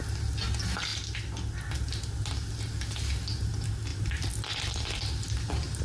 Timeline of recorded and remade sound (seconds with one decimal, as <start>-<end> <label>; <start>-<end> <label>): 0.0-3.9 recorded; 3.9-5.8 remade